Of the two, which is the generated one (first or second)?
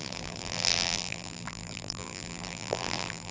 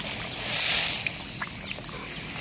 first